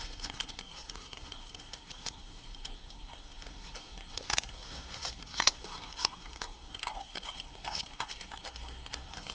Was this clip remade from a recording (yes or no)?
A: yes